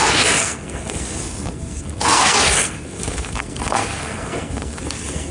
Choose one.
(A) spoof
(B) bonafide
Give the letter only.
A